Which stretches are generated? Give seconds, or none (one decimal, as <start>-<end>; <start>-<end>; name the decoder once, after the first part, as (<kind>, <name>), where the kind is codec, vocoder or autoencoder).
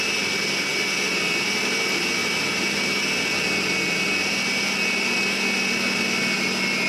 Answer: none